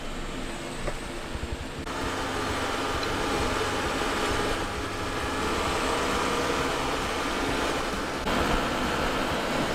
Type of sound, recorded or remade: recorded